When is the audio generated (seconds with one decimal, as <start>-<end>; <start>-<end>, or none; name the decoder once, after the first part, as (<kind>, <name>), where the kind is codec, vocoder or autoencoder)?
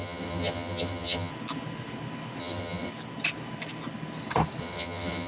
0.0-1.3 (vocoder, HiFi-GAN); 2.4-2.9; 4.6-5.3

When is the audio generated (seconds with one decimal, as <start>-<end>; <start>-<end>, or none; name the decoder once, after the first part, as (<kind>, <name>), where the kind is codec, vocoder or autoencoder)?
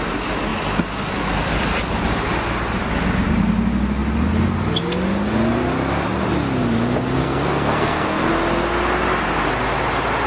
7.2-8.3 (codec, SNAC)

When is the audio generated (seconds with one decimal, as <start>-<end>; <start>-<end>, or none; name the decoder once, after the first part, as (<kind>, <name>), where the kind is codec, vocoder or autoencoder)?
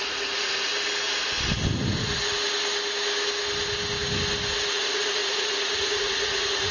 0.0-0.7 (vocoder, Vocos); 4.7-6.7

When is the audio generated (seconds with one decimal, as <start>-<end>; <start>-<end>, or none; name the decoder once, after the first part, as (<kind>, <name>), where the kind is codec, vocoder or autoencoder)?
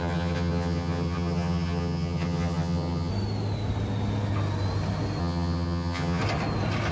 0.0-3.1 (vocoder, HiFi-GAN); 5.2-6.2